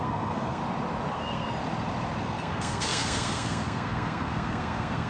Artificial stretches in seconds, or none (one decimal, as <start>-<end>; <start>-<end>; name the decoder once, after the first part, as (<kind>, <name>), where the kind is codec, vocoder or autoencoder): 0.0-0.6 (codec, SNAC); 1.1-1.6; 2.2-5.1